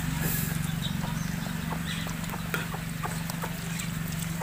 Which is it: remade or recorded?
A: recorded